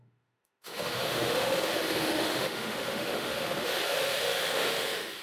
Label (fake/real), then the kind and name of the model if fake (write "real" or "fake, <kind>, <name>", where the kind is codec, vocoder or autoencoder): fake, autoencoder, DAC-VAE